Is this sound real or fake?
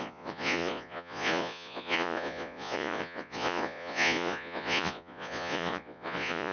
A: fake